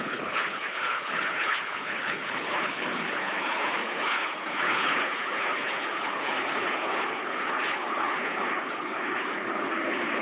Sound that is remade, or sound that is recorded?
remade